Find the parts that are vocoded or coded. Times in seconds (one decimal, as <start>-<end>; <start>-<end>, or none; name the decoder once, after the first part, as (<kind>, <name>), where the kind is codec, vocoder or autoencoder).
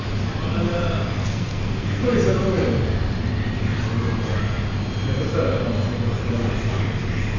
1.2-2.0 (codec, SNAC)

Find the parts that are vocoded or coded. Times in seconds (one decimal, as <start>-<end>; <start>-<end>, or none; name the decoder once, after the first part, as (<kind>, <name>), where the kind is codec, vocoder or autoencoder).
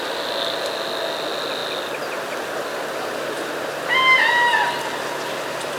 none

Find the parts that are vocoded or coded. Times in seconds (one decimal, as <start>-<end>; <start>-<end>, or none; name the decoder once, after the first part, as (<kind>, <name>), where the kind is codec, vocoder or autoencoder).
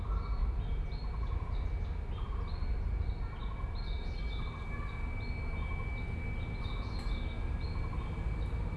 0.4-1.4 (vocoder, BigVGAN v2)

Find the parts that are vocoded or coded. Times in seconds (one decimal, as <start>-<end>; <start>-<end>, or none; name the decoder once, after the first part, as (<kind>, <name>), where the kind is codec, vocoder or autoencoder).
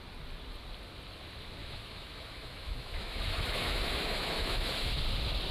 1.6-4.9 (autoencoder, DAC-VAE)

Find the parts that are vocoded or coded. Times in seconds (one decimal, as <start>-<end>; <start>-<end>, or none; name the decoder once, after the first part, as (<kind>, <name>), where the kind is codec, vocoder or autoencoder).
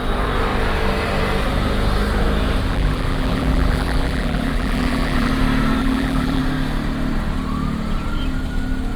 2.7-5.3 (vocoder, BigVGAN v2); 5.8-6.4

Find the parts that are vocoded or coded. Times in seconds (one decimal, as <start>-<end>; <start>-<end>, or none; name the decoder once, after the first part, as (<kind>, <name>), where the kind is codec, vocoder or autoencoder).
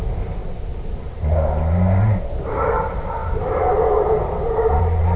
none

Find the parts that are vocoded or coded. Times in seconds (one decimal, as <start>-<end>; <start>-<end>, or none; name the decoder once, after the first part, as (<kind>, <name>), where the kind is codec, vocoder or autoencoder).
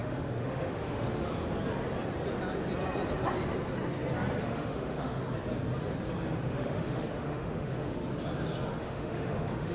0.0-1.3 (autoencoder, DAC-VAE); 4.4-5.2; 6.4-8.0; 8.8-9.7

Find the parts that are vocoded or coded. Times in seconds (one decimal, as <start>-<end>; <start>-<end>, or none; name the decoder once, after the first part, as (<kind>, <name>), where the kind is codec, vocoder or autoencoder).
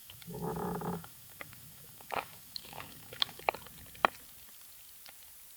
0.0-3.4 (autoencoder, DAC-VAE)